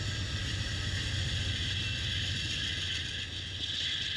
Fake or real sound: real